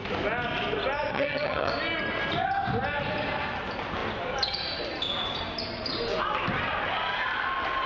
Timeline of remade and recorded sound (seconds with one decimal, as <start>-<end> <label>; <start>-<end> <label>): 0.0-1.1 recorded; 1.1-1.7 remade; 1.7-7.9 recorded